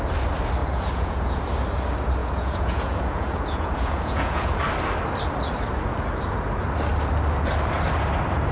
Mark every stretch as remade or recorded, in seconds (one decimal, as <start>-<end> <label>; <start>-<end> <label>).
0.0-0.6 recorded; 0.6-1.4 remade; 1.4-2.2 recorded; 2.2-4.5 remade; 4.5-8.5 recorded